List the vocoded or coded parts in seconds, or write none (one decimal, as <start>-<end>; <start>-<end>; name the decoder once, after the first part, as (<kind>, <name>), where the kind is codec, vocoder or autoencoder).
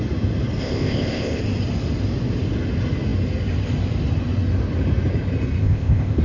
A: 0.6-1.4 (codec, ZipCodec); 5.6-6.2